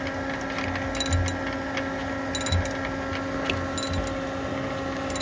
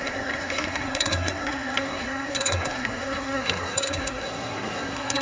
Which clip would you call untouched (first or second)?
first